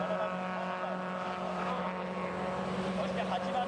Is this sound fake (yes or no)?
no